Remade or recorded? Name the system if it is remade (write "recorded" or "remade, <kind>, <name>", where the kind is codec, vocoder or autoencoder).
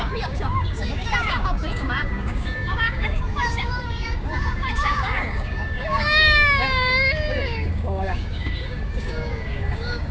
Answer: remade, codec, DAC